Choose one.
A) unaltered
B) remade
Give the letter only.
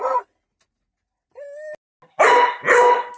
A